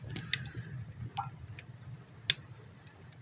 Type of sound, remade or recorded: recorded